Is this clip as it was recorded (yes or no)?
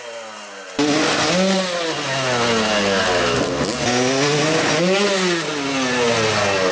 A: yes